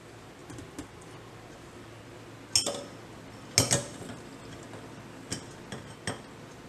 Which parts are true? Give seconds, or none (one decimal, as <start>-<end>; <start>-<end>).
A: 0.0-6.7